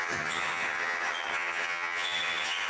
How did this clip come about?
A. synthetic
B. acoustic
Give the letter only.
A